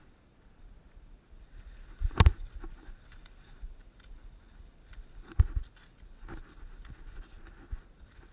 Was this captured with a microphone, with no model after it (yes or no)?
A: yes